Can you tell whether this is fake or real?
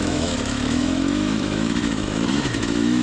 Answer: fake